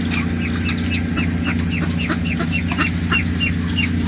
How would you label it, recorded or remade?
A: recorded